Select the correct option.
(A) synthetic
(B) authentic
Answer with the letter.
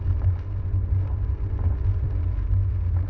B